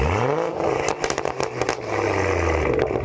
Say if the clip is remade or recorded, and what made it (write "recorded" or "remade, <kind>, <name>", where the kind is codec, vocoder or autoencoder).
recorded